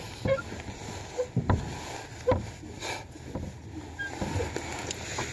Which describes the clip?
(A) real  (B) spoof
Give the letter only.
A